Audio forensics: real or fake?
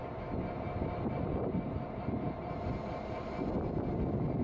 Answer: real